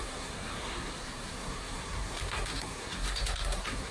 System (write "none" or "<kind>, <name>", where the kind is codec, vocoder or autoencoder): codec, SNAC